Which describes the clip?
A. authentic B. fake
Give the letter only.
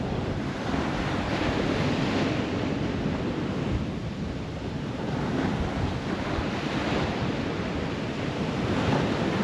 A